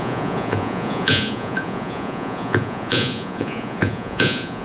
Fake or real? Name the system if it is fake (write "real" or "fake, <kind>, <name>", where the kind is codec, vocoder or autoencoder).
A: fake, vocoder, Vocos